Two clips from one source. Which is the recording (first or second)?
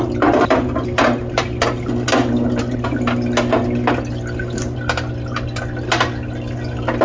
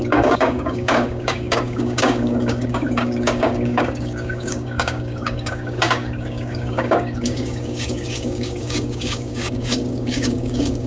first